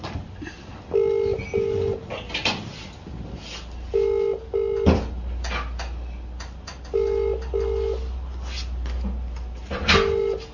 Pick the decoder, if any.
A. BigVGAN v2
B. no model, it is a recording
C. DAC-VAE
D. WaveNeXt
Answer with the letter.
B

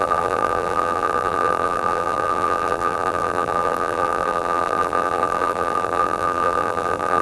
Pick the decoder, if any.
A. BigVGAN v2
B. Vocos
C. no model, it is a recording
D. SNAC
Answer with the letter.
A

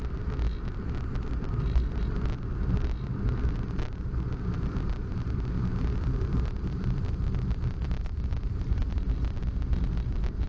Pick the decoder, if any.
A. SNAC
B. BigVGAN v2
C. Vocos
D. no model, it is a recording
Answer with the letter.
B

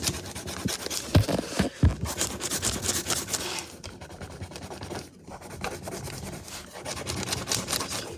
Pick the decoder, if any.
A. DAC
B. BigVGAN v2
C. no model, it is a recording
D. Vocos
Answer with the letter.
C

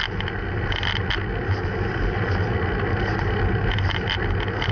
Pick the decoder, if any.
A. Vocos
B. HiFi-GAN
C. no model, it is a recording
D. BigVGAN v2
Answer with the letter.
C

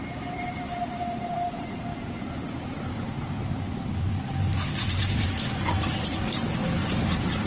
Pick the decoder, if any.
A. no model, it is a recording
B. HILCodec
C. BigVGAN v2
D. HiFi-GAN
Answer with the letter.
C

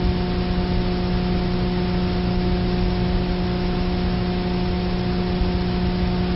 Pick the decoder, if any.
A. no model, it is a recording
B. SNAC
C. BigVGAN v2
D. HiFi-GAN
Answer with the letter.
A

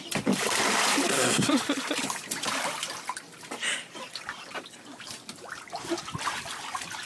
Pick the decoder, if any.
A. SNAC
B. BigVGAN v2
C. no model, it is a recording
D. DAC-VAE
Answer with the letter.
B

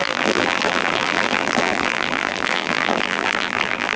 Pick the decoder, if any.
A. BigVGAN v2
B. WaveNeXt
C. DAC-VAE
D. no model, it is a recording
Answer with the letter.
A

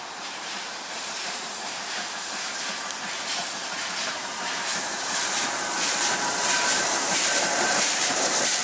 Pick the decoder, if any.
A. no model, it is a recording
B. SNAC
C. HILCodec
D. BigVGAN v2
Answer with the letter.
D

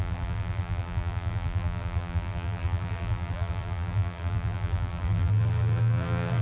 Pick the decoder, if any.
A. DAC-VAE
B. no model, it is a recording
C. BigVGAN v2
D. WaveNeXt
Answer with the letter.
C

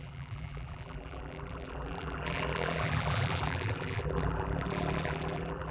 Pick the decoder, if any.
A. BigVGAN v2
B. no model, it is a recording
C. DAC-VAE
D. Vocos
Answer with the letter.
A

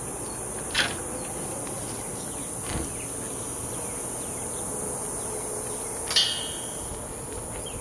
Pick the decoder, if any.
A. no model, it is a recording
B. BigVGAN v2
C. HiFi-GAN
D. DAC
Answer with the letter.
A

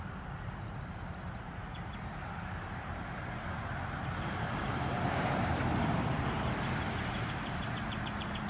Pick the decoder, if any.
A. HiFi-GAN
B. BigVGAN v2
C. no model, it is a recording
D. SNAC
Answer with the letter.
B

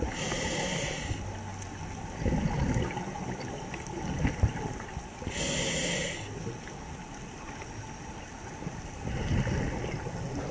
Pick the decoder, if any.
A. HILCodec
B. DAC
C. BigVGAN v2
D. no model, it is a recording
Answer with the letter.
D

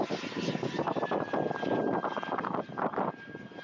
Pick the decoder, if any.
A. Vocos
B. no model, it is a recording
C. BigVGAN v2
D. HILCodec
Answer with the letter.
B